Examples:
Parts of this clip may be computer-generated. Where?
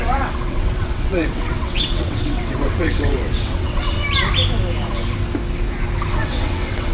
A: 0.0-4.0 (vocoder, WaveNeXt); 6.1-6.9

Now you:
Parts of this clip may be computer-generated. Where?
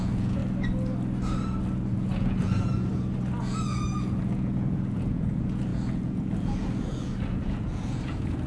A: 0.0-0.4 (vocoder, Vocos); 1.9-2.9; 3.4-8.5